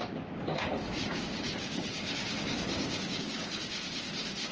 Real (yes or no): no